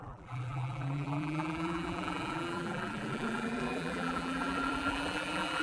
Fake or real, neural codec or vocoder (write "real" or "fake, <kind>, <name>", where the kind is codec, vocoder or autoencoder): fake, vocoder, BigVGAN v2